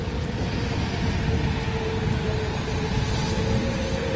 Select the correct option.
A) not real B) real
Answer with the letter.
B